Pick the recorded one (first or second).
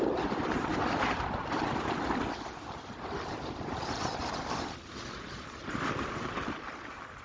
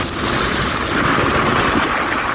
second